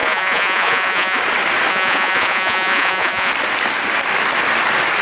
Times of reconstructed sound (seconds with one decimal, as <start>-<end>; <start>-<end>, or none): 0.0-1.2; 1.7-3.3